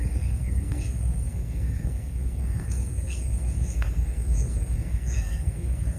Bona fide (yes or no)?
no